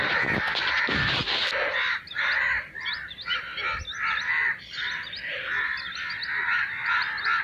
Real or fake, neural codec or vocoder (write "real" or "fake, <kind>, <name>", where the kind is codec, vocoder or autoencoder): real